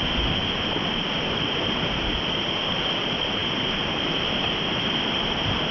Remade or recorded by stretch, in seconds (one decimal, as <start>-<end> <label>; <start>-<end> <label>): 0.0-5.7 recorded